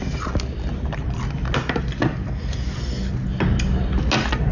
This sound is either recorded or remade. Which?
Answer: recorded